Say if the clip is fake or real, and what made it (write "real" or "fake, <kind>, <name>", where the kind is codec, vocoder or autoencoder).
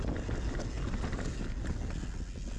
real